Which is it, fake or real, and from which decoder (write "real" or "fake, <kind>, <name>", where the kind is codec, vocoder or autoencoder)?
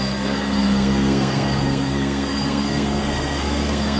fake, codec, SNAC